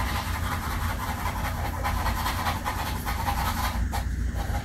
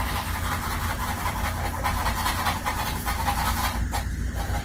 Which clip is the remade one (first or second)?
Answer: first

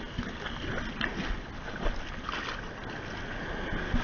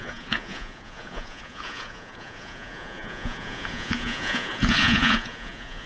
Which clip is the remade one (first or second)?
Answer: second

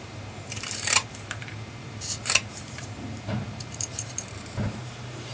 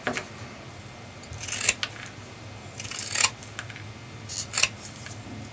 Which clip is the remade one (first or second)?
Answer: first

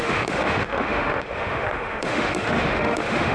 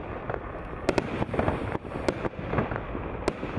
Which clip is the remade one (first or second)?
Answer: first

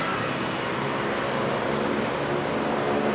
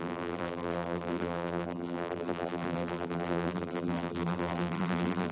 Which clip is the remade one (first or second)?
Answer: second